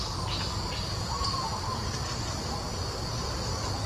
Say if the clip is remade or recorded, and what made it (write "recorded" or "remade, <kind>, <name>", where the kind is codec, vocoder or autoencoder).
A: recorded